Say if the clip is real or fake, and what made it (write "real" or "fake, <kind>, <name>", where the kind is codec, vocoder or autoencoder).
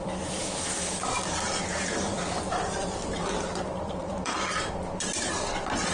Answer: fake, vocoder, BigVGAN v2